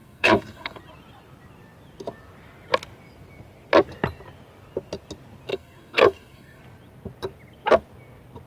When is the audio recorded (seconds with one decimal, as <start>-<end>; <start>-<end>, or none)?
0.8-5.5; 6.6-8.5